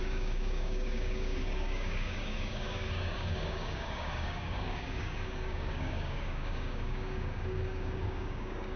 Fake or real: fake